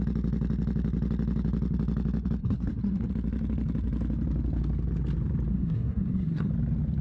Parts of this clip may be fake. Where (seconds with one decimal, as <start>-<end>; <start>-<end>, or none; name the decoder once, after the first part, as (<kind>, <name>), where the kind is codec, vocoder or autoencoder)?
2.4-3.1 (codec, SNAC); 5.5-6.5